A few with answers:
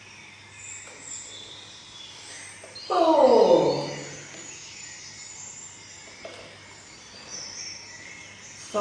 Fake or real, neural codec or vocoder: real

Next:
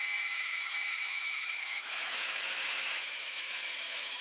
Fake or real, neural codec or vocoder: fake, autoencoder, DAC-VAE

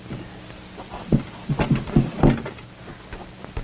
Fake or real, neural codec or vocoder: real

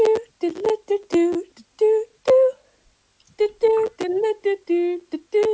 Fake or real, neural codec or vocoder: real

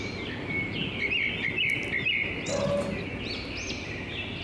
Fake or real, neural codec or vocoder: real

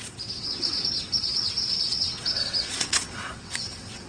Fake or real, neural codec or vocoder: fake, vocoder, WaveNeXt